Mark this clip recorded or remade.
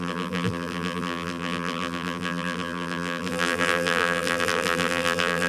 remade